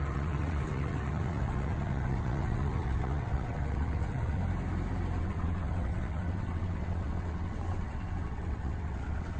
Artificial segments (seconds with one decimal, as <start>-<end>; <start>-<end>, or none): 0.0-4.4; 5.2-9.4